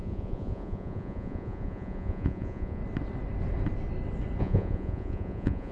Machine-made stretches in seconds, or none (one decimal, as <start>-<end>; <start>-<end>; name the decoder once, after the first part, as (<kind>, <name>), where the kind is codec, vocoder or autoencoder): 0.0-2.8 (vocoder, Vocos); 4.4-5.7